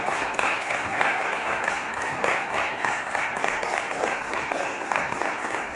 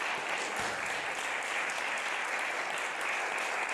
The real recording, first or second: second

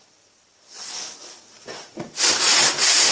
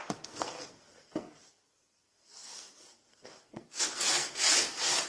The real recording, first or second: first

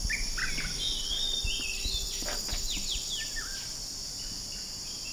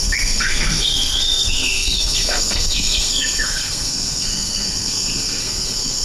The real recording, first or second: first